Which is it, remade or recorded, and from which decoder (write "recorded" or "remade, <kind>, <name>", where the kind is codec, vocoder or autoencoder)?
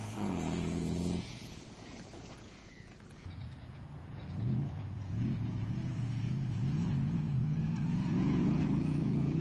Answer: remade, vocoder, Vocos